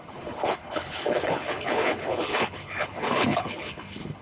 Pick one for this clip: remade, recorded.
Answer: remade